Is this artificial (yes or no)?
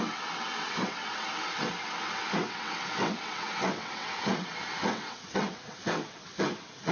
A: yes